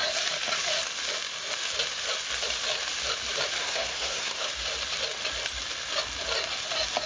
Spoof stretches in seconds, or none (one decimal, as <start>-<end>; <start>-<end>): 3.6-4.5

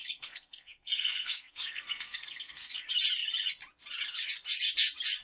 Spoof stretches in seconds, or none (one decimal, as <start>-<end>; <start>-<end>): 0.0-2.8

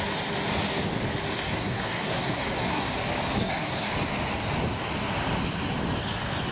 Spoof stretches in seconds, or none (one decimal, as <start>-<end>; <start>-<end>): 1.3-2.9; 3.4-3.9

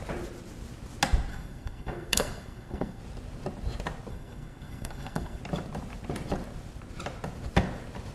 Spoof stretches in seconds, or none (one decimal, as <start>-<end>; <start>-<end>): 1.3-3.0; 4.1-5.4

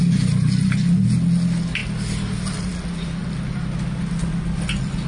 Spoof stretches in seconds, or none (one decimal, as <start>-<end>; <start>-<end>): none

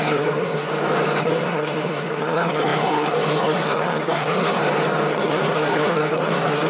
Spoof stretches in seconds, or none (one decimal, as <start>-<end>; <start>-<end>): 0.0-0.7; 1.2-4.6; 5.1-6.7

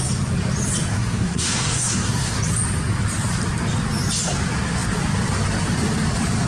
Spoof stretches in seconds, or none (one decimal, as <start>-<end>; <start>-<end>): 0.9-2.4

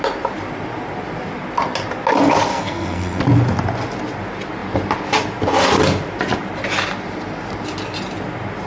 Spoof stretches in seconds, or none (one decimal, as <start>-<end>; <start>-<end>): 2.5-3.2